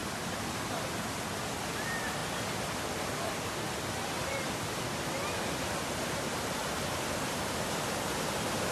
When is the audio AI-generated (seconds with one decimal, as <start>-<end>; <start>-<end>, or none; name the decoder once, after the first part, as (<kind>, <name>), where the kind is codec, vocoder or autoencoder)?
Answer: 0.0-1.1 (vocoder, BigVGAN v2)